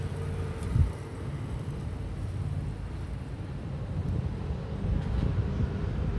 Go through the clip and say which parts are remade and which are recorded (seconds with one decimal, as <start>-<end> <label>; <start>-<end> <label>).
0.0-6.2 recorded